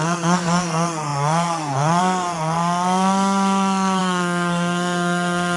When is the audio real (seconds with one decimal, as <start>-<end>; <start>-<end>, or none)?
none